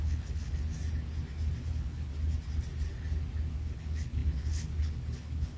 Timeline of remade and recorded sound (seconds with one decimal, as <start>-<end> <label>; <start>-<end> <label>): 0.0-0.6 remade; 0.6-1.7 recorded; 1.7-2.1 remade; 2.1-3.5 recorded; 3.5-5.6 remade